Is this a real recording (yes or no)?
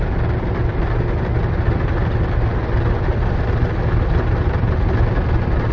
yes